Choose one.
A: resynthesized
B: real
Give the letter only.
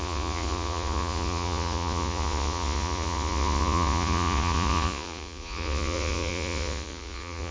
A